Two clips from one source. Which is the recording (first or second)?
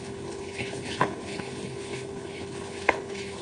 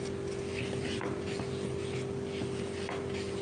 second